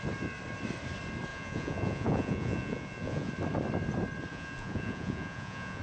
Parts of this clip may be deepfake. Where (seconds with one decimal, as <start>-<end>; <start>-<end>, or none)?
1.3-3.3; 4.3-5.8